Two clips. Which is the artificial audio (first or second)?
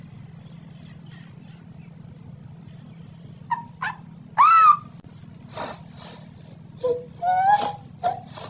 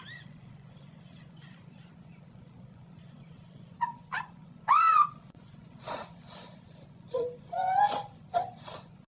second